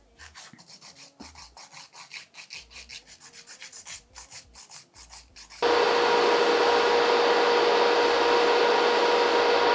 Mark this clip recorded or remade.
recorded